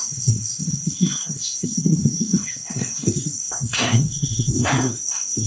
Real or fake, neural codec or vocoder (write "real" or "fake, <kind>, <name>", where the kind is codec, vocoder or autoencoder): fake, codec, SNAC